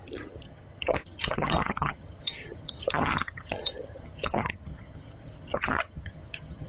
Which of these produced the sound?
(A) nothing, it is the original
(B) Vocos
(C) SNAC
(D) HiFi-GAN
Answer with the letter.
D